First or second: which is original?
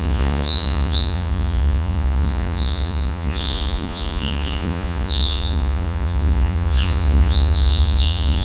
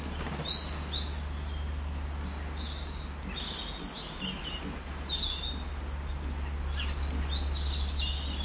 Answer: second